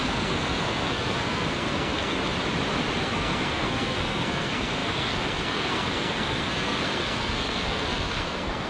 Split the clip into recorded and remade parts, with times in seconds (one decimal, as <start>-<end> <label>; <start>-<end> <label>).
0.0-2.2 remade; 2.2-3.0 recorded; 3.0-8.7 remade